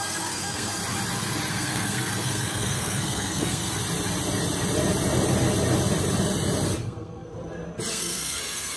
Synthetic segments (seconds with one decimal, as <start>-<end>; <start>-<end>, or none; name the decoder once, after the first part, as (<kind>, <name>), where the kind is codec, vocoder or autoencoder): 0.0-0.8 (codec, SNAC); 1.5-3.8; 6.8-7.3; 7.9-8.8

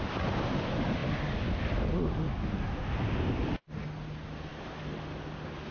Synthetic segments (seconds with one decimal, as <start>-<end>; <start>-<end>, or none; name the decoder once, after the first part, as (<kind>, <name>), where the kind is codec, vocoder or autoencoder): none

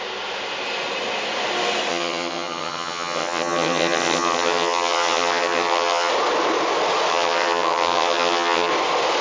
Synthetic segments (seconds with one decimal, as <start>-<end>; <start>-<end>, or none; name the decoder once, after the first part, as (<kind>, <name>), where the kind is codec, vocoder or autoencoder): 1.9-6.1 (vocoder, HiFi-GAN); 7.1-8.7

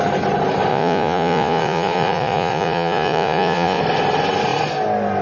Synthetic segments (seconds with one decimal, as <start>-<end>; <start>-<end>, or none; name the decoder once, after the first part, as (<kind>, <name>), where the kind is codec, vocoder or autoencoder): 0.7-3.8 (vocoder, Vocos)

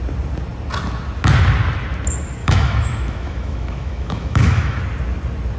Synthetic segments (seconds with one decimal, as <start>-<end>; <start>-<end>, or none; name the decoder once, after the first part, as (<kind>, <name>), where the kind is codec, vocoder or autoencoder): 2.4-4.8 (autoencoder, DAC-VAE)

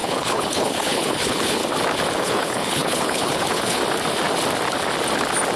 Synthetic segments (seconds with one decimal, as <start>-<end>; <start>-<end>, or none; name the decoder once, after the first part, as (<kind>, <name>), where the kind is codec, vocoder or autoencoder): 0.0-1.6 (codec, HILCodec); 2.2-3.8